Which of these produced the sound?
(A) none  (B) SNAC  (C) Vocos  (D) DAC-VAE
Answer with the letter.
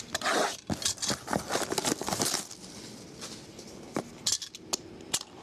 A